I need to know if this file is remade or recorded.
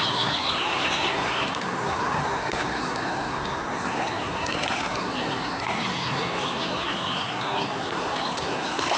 remade